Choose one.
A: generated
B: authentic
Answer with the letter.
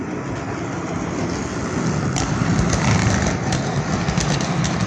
B